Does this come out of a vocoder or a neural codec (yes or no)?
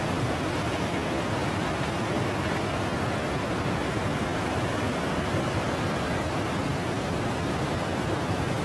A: no